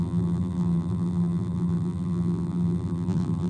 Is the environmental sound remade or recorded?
remade